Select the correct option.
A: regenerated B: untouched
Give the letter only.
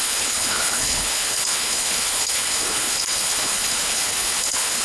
A